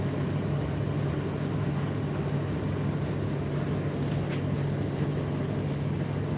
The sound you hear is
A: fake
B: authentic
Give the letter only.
B